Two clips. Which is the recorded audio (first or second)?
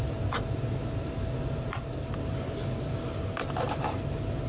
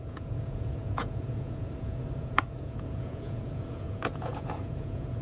first